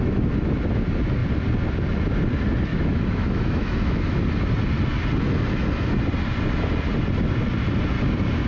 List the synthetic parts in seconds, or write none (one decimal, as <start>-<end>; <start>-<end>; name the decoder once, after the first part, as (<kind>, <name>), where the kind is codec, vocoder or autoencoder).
2.7-4.2 (autoencoder, DAC-VAE)